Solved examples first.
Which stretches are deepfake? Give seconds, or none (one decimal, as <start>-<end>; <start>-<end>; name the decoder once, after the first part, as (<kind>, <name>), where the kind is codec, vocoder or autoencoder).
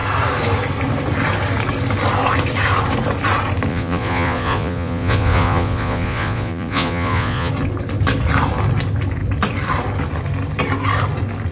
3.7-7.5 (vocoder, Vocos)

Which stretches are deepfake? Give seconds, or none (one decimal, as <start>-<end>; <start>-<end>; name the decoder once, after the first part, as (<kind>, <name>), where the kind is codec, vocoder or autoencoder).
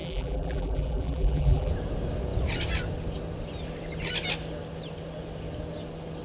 0.0-1.7 (vocoder, BigVGAN v2)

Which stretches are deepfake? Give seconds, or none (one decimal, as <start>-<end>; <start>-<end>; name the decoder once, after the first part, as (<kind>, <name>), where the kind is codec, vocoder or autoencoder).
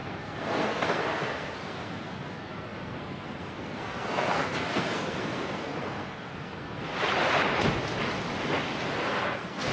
0.0-6.9 (codec, SNAC); 9.0-9.7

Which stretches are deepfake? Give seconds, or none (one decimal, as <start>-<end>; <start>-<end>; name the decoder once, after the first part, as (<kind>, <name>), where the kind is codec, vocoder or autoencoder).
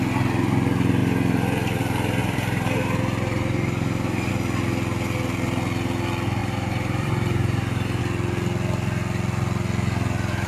2.2-4.3 (vocoder, BigVGAN v2); 6.4-8.0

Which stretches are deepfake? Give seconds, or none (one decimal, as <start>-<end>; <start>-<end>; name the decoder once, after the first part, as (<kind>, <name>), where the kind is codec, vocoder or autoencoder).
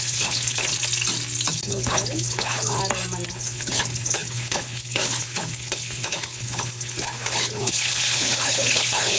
0.0-0.7 (codec, HILCodec); 1.5-2.8; 3.3-9.2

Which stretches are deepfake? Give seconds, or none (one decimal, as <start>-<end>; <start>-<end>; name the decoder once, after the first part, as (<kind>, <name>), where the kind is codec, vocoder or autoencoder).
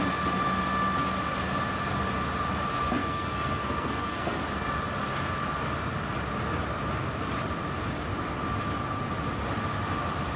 3.0-4.4 (codec, SNAC)